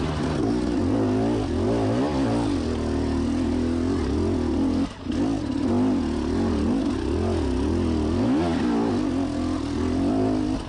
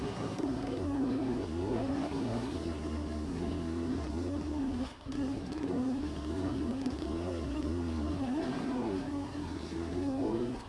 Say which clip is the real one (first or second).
first